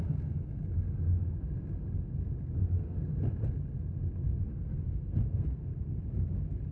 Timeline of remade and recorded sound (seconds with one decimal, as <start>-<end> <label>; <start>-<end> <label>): 0.0-2.6 recorded; 2.6-3.1 remade; 3.1-4.5 recorded; 4.5-6.0 remade; 6.0-6.7 recorded